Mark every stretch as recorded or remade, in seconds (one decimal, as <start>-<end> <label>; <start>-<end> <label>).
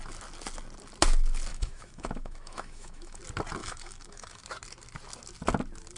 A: 0.0-1.5 recorded; 1.5-3.2 remade; 3.2-3.6 recorded; 3.6-4.4 remade; 4.4-6.0 recorded